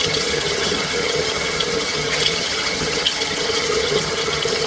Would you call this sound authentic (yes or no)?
no